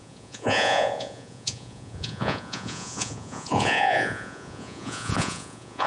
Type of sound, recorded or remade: remade